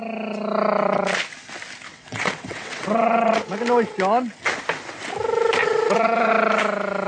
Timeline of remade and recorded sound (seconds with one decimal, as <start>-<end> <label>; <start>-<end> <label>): 0.0-1.9 recorded; 1.9-3.3 remade; 3.3-5.6 recorded; 5.6-6.3 remade; 6.3-7.1 recorded

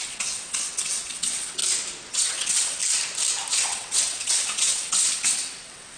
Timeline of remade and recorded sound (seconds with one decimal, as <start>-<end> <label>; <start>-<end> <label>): 0.0-1.6 remade; 1.6-2.1 recorded; 2.1-2.8 remade; 2.8-3.5 recorded; 3.5-6.0 remade

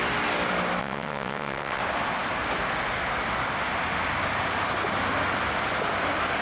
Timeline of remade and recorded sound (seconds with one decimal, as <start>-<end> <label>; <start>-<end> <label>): 0.0-0.8 recorded; 0.8-1.8 remade; 1.8-6.4 recorded

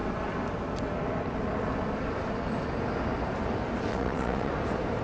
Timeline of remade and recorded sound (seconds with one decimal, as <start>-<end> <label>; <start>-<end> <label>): 0.0-3.9 recorded; 3.9-4.5 remade; 4.5-5.0 recorded

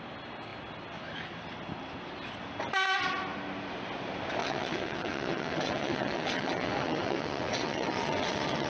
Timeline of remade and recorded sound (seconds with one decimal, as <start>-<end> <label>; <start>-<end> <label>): 0.0-4.4 recorded; 4.4-8.7 remade

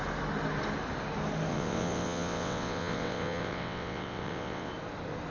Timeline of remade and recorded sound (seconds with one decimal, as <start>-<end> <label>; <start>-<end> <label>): 0.0-1.5 recorded; 1.5-4.7 remade; 4.7-5.3 recorded

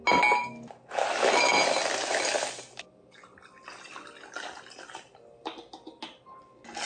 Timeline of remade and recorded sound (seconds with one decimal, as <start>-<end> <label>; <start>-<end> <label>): 0.0-6.9 recorded